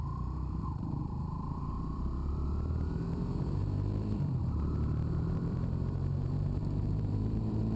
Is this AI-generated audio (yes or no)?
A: yes